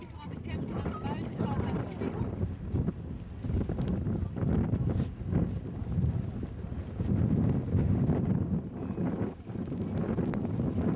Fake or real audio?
real